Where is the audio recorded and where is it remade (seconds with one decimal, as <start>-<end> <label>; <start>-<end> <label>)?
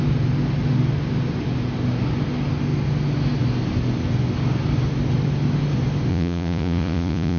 0.0-6.1 recorded; 6.1-7.4 remade